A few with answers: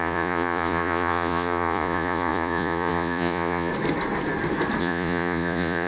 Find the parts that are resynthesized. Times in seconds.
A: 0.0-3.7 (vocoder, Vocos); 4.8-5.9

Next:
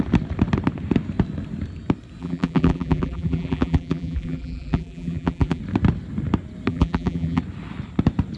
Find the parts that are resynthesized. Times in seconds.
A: 2.2-5.6 (vocoder, BigVGAN v2); 6.7-7.4

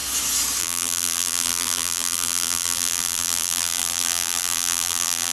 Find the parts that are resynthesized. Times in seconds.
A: 0.6-5.3 (vocoder, BigVGAN v2)